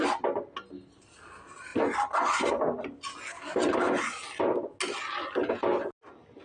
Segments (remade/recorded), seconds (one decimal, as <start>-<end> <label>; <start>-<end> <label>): 0.0-6.4 recorded